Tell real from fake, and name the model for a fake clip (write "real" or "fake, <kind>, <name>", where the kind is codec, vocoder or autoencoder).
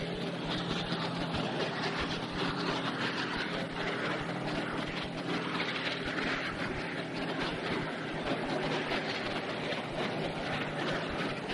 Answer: fake, vocoder, BigVGAN v2